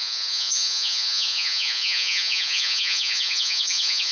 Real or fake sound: fake